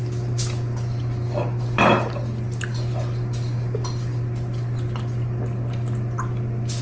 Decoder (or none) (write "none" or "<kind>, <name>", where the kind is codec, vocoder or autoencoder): none